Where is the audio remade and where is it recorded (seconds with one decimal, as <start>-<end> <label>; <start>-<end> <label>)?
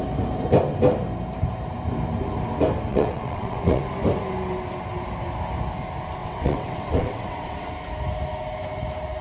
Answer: 0.0-2.9 recorded; 2.9-3.8 remade; 3.8-6.2 recorded; 6.2-7.7 remade; 7.7-9.2 recorded